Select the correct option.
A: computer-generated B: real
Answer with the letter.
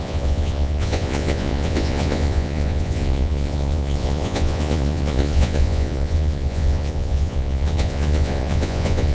A